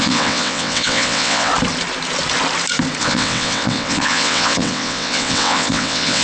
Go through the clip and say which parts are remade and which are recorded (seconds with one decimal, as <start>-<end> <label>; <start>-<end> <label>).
0.0-1.5 remade; 1.5-3.0 recorded; 3.0-6.2 remade